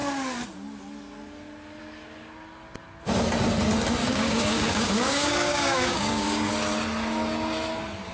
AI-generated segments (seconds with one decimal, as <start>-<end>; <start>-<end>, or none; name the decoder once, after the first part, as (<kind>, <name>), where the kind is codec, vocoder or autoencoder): 4.0-6.5 (codec, DAC)